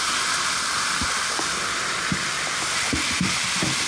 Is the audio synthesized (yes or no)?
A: no